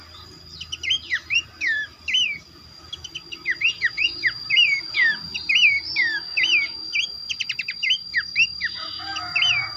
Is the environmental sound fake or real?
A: real